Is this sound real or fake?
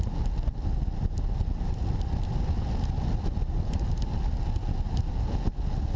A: real